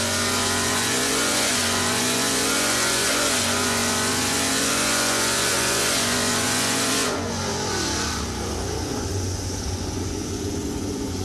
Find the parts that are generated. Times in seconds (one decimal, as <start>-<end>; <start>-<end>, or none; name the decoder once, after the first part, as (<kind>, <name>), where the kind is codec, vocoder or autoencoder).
0.0-11.2 (vocoder, Vocos)